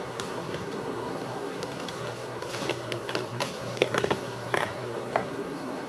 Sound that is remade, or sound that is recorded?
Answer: remade